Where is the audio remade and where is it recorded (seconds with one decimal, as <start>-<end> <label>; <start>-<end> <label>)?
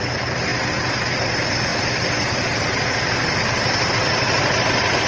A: 0.0-5.1 recorded